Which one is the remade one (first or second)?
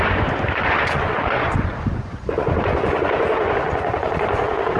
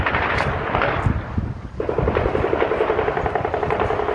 first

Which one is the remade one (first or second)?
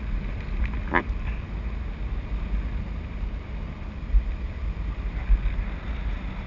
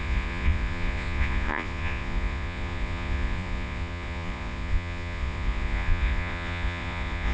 second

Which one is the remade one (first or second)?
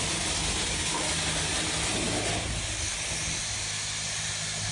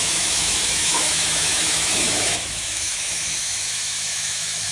second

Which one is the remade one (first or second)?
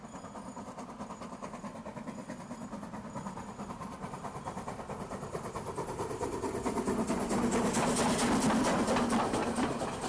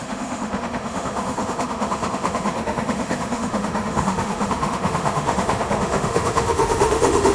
second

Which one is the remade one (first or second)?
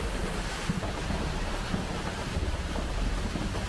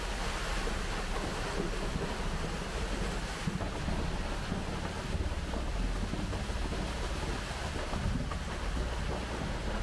first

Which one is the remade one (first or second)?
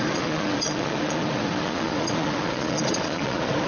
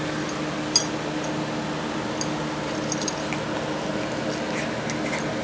first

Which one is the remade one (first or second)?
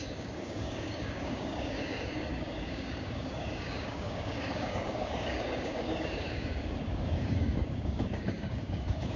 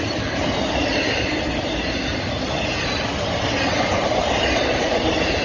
first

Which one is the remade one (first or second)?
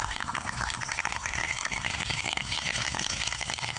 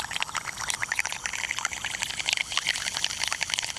first